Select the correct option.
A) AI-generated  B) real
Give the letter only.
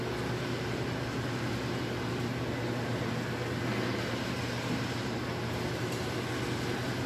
B